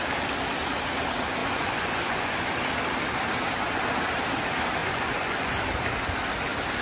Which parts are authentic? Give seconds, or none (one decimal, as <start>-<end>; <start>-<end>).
0.0-1.4; 2.5-4.8; 5.5-6.8